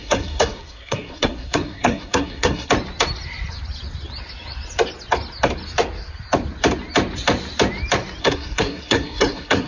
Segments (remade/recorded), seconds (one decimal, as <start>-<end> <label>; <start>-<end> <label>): 0.0-2.7 remade; 2.7-8.2 recorded; 8.2-9.7 remade